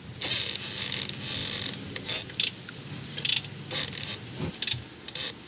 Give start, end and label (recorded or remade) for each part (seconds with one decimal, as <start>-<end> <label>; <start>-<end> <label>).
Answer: 0.0-5.5 recorded